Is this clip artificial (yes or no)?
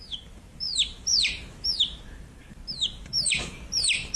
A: yes